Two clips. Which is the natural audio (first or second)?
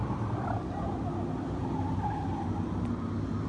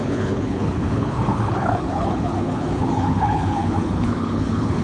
first